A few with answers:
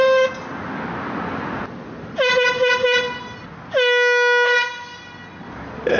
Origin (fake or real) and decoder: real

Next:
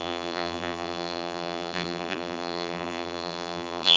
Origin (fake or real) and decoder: fake, vocoder, BigVGAN v2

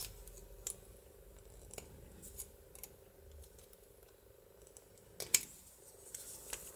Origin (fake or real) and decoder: real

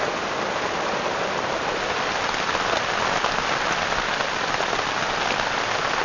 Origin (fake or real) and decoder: real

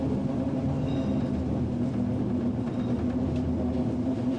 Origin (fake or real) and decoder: real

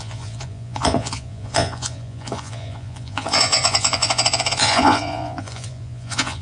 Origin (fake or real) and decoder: fake, vocoder, Vocos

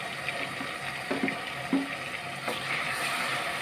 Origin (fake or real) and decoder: real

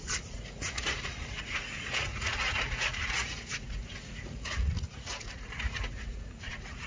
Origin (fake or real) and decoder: fake, vocoder, Vocos